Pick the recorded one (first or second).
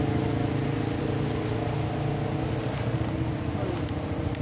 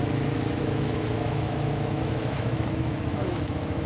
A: first